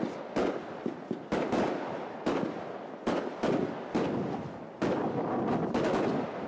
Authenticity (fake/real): real